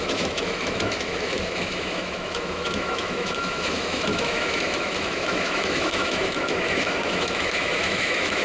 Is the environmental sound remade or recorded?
remade